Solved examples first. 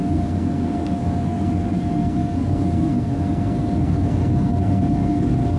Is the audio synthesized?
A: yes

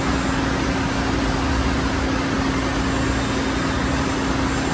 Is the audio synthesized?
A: no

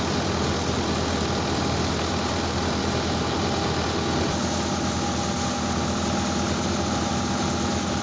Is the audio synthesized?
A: no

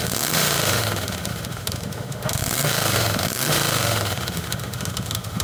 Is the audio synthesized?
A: yes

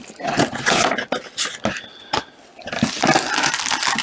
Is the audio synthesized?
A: no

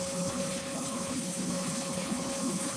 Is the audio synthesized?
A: yes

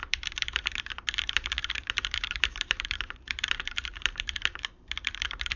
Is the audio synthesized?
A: yes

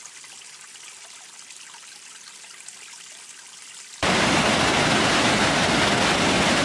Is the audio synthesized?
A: no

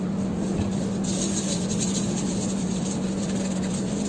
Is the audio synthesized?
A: no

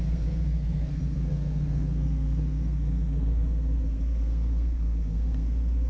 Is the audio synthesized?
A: yes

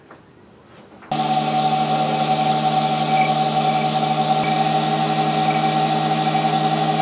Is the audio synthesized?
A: no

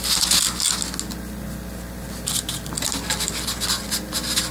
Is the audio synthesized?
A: no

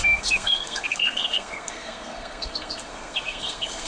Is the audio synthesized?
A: yes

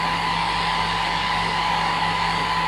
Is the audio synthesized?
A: yes